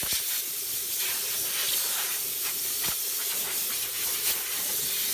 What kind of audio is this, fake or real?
real